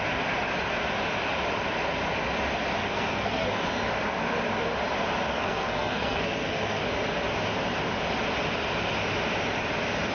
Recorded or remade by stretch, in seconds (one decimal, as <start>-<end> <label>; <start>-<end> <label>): 0.0-2.8 recorded; 2.8-3.5 remade; 3.5-5.3 recorded; 5.3-6.8 remade; 6.8-10.1 recorded